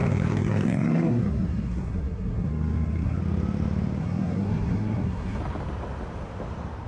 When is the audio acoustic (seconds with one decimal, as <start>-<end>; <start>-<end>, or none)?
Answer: 3.2-4.0; 5.4-6.9